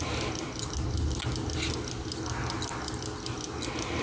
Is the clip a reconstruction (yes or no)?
no